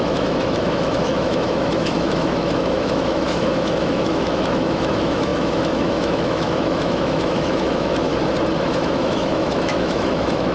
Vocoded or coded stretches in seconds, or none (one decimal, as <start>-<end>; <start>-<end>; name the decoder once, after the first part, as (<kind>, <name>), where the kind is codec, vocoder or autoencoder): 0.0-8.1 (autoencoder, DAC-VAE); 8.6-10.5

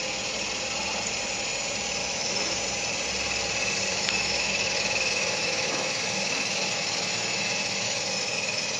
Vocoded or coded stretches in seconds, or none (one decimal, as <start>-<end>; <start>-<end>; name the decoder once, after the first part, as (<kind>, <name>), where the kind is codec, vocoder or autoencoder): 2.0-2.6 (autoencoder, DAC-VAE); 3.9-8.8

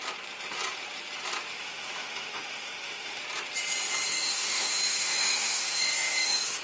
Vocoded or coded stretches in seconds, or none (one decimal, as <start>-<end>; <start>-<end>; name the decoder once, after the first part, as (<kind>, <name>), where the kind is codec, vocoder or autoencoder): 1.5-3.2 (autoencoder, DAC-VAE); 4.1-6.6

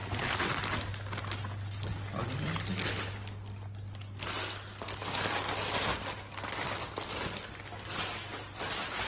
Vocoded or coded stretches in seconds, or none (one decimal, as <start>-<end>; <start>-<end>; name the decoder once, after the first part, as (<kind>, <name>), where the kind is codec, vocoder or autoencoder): none

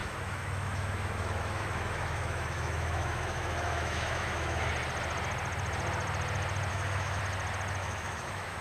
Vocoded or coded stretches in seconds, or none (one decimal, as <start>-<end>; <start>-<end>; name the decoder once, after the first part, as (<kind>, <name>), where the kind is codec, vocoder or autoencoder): 0.0-4.7 (autoencoder, DAC-VAE); 6.7-7.2; 7.8-8.6

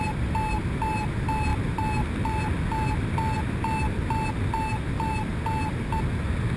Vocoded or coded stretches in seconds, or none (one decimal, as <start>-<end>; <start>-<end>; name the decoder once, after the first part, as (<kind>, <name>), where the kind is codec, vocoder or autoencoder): none

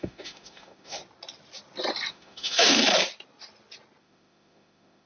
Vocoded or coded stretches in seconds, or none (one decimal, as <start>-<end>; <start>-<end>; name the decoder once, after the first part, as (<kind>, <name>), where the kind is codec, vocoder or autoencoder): 0.0-1.0 (autoencoder, DAC-VAE); 2.1-2.8; 4.0-5.1